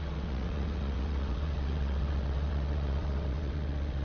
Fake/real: fake